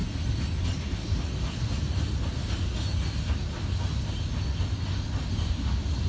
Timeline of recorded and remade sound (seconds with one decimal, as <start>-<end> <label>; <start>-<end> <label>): 0.0-6.1 recorded